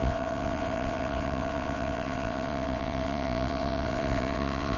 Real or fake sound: fake